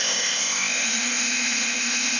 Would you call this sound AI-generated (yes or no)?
yes